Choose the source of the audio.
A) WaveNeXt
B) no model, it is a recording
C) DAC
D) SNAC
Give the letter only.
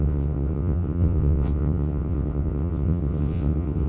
A